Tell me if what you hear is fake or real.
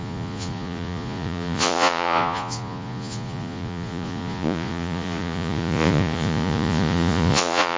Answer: fake